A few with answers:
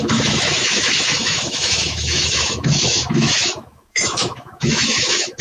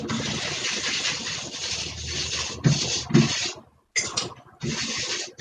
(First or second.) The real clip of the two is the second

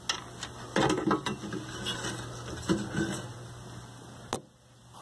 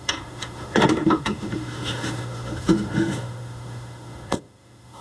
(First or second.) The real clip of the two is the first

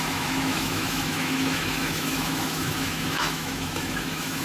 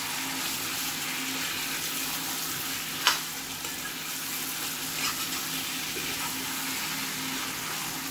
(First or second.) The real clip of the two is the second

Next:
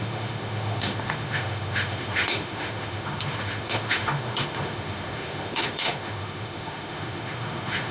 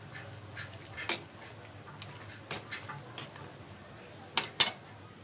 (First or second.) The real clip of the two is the second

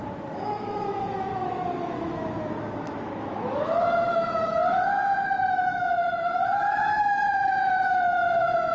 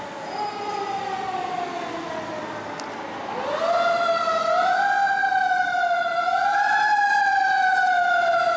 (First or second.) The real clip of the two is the second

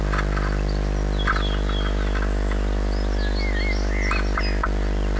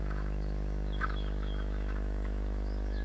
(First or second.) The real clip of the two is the first